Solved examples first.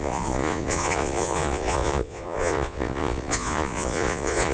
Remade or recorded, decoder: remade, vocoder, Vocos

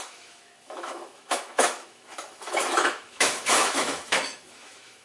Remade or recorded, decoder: remade, autoencoder, DAC-VAE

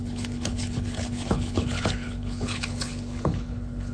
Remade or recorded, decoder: remade, codec, HILCodec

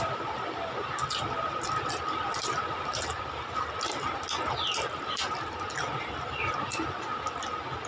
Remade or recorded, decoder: recorded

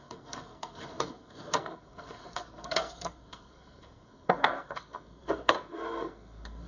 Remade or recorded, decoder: remade, codec, SNAC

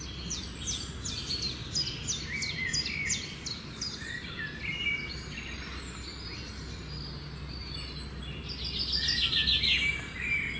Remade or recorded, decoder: recorded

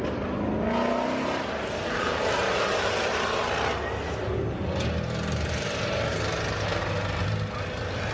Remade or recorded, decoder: recorded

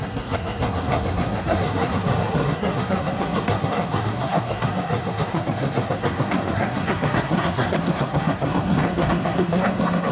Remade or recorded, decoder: remade, codec, SNAC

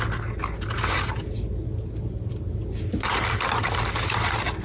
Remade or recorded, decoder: recorded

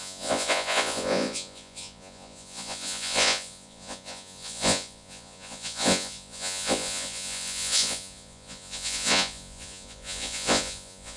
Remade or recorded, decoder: remade, vocoder, Vocos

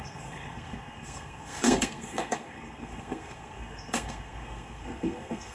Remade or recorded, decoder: remade, codec, SNAC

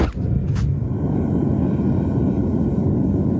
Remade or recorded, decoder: recorded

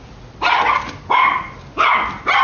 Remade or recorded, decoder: recorded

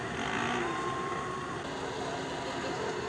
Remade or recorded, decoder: recorded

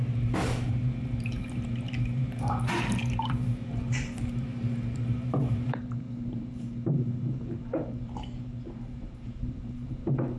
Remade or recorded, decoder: remade, vocoder, BigVGAN v2